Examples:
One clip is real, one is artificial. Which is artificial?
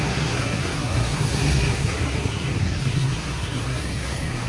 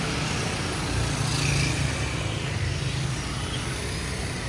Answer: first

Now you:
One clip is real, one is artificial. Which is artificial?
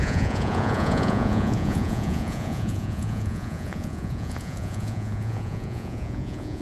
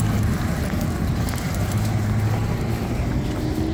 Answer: first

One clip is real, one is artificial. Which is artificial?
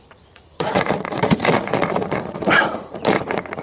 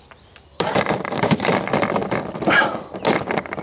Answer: first